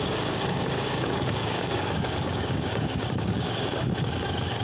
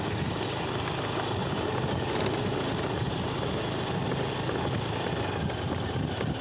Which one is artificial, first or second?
first